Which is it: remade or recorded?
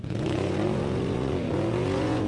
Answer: remade